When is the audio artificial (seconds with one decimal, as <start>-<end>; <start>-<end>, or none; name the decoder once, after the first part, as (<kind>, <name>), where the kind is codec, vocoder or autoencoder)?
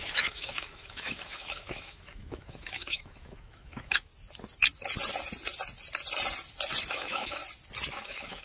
0.0-4.1 (autoencoder, DAC-VAE); 6.9-7.4; 7.9-8.4